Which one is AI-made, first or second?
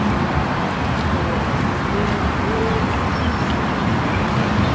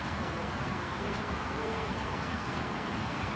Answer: second